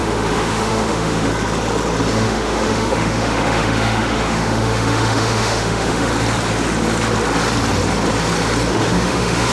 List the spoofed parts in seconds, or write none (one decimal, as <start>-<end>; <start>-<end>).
0.0-1.3; 2.1-6.1; 8.7-9.5